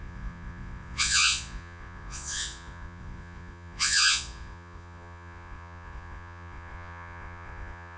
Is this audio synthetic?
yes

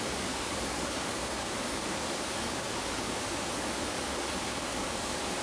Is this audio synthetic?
yes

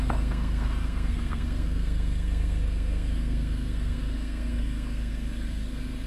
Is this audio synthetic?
yes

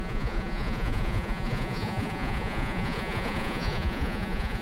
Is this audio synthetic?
yes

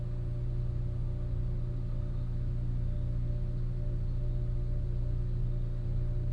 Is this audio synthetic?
no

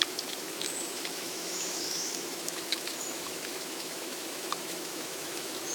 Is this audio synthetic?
yes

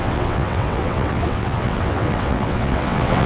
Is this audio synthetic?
yes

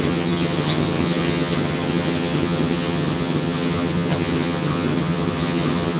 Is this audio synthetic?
yes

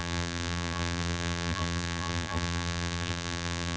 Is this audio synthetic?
yes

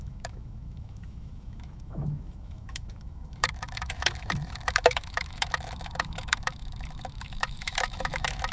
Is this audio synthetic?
yes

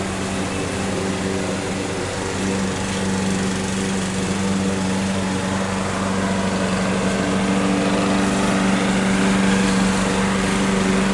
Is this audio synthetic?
no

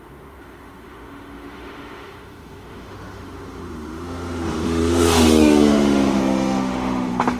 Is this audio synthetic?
yes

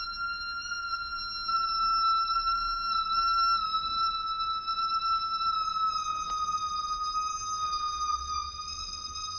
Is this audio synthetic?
no